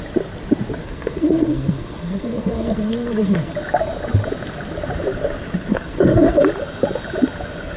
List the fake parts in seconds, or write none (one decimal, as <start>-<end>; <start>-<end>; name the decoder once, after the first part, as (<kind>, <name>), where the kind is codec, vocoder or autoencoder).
0.8-3.5 (codec, SNAC); 5.7-6.4